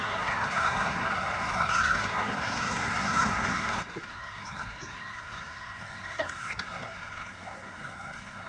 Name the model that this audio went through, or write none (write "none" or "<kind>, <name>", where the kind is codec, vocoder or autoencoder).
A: codec, SNAC